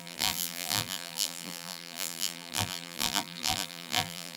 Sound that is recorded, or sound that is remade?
remade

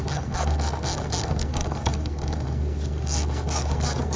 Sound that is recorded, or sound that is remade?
remade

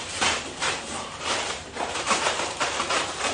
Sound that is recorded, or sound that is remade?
remade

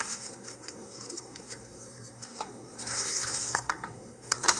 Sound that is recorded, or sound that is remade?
remade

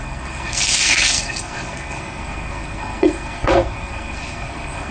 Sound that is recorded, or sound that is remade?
remade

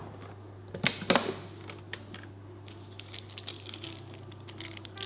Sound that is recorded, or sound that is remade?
recorded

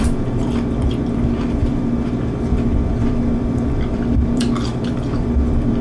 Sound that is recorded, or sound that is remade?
remade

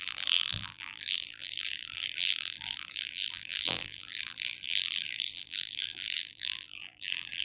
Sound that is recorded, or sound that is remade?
remade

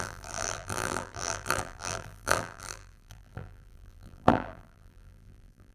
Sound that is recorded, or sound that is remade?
remade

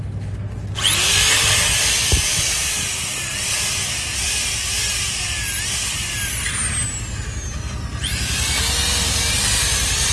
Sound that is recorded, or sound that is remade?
recorded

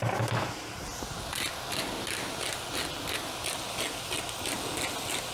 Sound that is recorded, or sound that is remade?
recorded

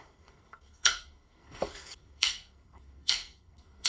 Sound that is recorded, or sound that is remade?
remade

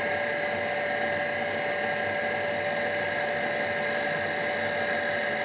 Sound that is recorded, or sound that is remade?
recorded